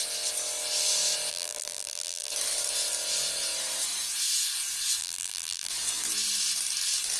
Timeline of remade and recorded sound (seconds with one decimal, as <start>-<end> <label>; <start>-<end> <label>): 0.0-1.3 recorded; 1.3-2.3 remade; 2.3-5.0 recorded; 5.0-5.7 remade; 5.7-7.2 recorded